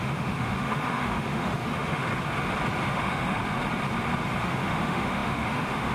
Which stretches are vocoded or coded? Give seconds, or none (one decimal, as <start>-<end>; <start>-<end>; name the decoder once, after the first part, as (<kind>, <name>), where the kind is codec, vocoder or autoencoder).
0.0-2.1 (autoencoder, DAC-VAE); 2.8-3.4; 4.4-5.9